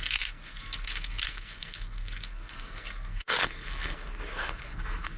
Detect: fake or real fake